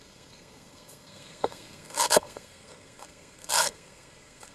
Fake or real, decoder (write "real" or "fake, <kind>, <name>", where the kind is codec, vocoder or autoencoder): fake, codec, SNAC